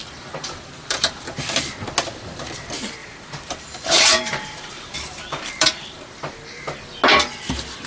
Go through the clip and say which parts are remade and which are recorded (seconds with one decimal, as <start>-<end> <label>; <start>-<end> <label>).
0.0-1.6 remade; 1.6-3.0 recorded; 3.0-6.3 remade; 6.3-7.9 recorded